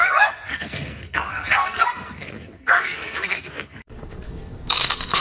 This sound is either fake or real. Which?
fake